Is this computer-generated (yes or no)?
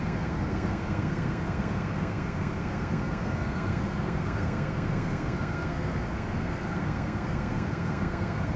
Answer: yes